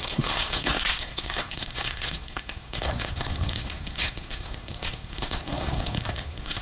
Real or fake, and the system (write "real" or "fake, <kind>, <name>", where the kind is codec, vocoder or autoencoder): fake, codec, SNAC